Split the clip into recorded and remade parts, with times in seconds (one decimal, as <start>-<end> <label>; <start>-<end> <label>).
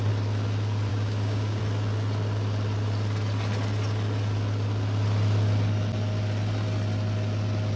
0.0-0.9 recorded; 0.9-1.6 remade; 1.6-7.8 recorded